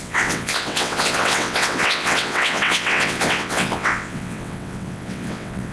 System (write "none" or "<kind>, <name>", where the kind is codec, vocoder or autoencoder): vocoder, WaveNeXt